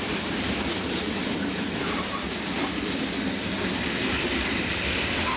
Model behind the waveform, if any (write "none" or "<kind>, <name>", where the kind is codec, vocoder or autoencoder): vocoder, BigVGAN v2